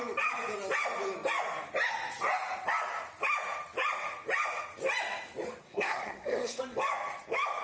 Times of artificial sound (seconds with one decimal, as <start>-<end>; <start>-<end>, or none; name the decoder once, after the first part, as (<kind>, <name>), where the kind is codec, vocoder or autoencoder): 5.6-6.6 (codec, SNAC)

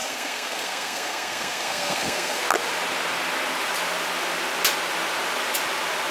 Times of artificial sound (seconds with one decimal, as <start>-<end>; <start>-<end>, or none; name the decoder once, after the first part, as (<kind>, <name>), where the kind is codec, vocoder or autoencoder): 0.0-2.4 (codec, SNAC)